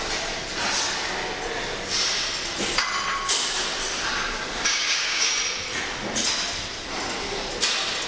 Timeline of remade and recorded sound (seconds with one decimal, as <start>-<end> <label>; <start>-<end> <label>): 0.0-4.7 recorded; 4.7-5.3 remade; 5.3-8.1 recorded